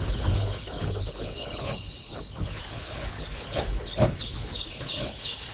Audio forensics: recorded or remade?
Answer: remade